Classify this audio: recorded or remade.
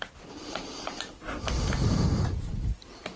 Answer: recorded